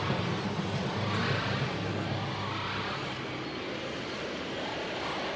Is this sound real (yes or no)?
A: yes